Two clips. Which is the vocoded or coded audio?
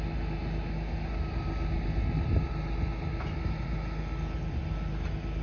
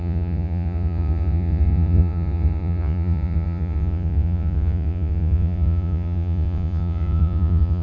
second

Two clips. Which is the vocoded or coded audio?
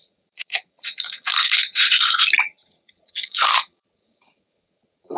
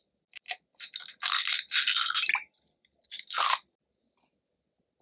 first